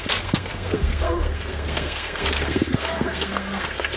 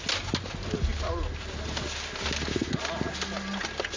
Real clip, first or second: second